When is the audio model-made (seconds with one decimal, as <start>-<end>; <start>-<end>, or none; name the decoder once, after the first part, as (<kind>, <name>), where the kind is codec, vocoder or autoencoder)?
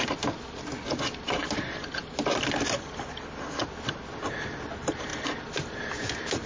none